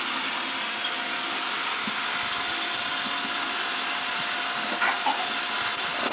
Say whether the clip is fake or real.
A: real